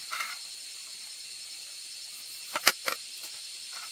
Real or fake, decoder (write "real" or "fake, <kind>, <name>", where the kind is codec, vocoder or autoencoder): real